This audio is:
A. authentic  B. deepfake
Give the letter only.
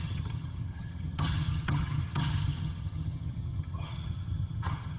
B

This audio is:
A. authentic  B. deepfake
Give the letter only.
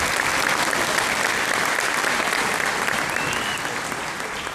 A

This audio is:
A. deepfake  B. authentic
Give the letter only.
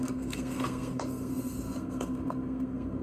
A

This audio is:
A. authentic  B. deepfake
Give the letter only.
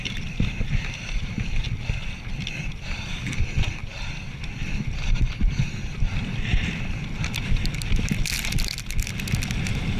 A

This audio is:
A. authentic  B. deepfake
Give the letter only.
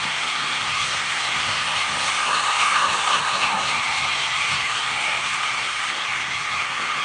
B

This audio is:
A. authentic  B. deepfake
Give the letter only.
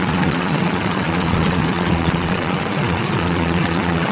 B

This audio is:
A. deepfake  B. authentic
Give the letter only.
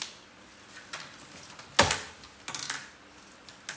B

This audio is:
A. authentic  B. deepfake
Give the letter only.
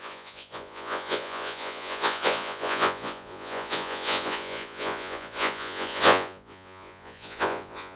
B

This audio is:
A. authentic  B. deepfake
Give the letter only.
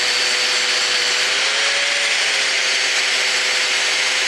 A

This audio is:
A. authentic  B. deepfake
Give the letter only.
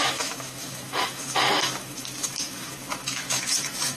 B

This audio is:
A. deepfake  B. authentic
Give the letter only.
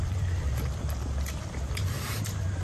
A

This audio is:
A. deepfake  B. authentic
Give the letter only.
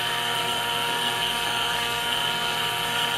A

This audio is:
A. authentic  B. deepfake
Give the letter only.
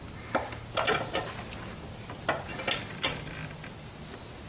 A